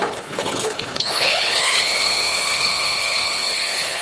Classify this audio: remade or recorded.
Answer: remade